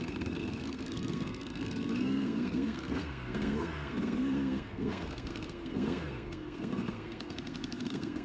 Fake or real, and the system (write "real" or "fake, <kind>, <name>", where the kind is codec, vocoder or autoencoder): fake, codec, SNAC